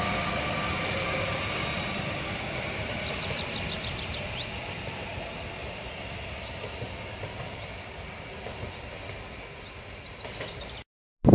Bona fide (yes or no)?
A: yes